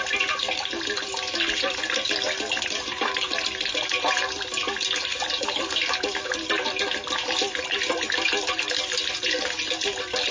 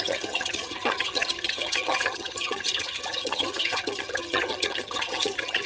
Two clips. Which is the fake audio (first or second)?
second